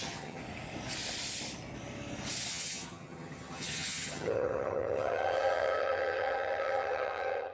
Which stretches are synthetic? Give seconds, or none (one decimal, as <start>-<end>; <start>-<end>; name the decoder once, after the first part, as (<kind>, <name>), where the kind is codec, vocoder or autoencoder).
0.0-0.4 (vocoder, HiFi-GAN); 2.5-7.5